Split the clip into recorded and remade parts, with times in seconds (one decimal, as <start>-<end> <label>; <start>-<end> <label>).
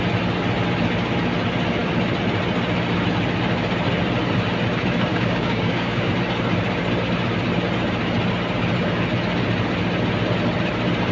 0.0-5.1 recorded; 5.1-6.1 remade; 6.1-11.1 recorded